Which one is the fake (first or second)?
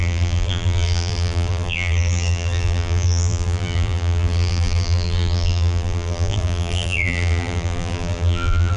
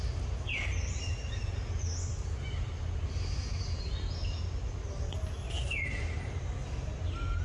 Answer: first